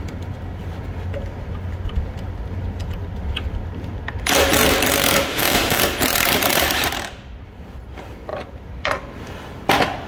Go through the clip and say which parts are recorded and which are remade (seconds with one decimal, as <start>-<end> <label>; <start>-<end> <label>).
0.0-5.3 recorded; 5.3-5.8 remade; 5.8-10.1 recorded